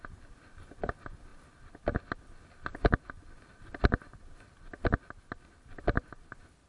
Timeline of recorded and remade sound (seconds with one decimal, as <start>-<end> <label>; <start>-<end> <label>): 0.0-6.7 recorded